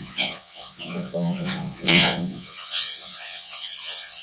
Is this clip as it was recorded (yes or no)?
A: no